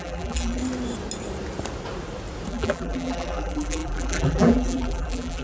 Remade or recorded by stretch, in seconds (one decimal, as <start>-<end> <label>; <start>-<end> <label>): 0.0-0.6 remade; 0.6-2.5 recorded; 2.5-5.4 remade